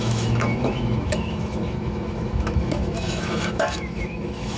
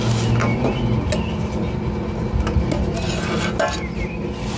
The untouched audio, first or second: second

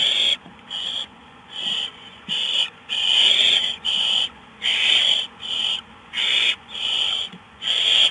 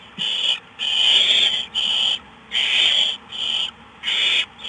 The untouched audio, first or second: second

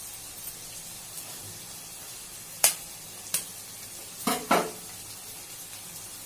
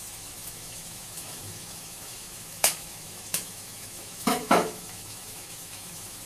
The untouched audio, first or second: first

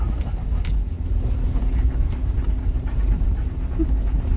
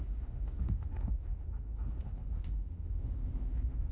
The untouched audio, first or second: first